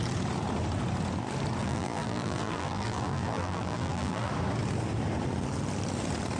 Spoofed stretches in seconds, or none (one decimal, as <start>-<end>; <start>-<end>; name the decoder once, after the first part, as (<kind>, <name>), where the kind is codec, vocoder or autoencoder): 1.6-4.3 (vocoder, BigVGAN v2)